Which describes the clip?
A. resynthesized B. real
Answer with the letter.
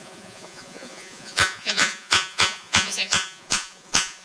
A